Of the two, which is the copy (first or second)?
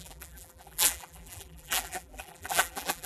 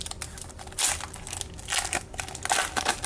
first